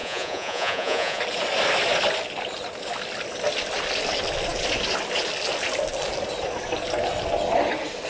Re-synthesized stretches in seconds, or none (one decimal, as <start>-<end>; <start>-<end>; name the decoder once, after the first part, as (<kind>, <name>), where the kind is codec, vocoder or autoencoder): 0.0-1.2 (vocoder, Vocos)